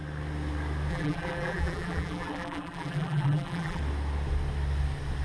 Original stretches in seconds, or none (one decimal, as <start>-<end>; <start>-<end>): 0.0-0.9; 3.8-5.2